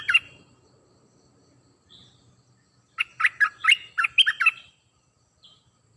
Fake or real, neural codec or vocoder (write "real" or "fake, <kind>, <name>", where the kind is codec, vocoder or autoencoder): real